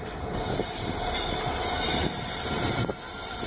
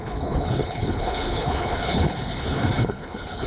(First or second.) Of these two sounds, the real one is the first